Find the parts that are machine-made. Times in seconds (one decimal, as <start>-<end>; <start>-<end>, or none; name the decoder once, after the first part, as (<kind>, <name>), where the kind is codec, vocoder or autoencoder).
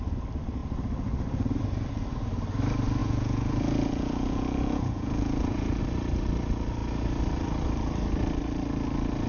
3.0-5.8 (vocoder, Vocos)